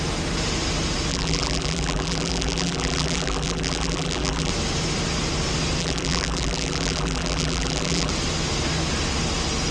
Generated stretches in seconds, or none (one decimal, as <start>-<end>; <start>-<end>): 1.1-4.5; 5.8-8.1